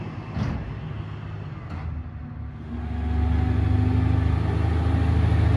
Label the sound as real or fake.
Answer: real